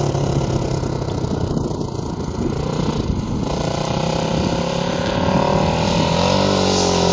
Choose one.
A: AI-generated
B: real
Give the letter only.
B